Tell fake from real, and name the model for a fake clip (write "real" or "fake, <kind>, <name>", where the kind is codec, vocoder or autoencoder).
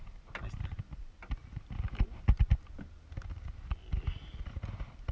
real